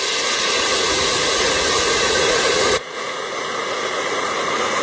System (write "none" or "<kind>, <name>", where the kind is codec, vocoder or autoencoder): vocoder, Vocos